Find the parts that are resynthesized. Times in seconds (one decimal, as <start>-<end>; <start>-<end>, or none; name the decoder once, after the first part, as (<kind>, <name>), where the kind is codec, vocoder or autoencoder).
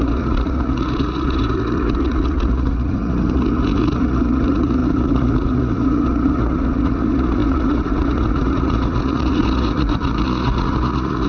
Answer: 0.0-11.3 (vocoder, Vocos)